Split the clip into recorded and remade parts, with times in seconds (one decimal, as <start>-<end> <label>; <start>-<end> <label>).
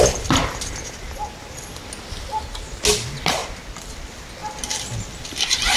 0.0-5.8 recorded